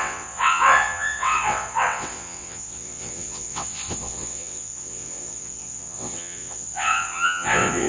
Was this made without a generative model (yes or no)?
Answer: no